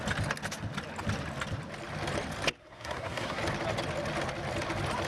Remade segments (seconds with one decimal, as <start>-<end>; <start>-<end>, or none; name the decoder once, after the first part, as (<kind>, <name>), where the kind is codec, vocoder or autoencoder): 2.6-3.4 (codec, SNAC)